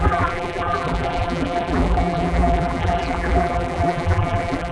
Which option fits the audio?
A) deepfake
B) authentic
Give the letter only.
A